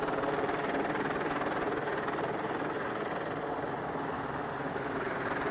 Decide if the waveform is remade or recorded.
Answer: recorded